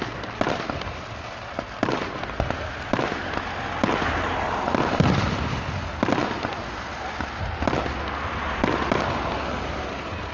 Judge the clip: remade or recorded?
recorded